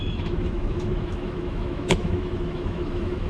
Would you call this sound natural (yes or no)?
no